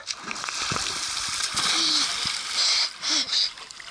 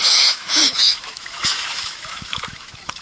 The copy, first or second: second